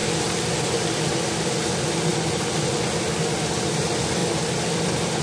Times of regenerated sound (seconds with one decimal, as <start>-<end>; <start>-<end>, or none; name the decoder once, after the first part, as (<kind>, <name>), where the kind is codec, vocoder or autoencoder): 0.5-2.1 (vocoder, BigVGAN v2); 3.6-5.2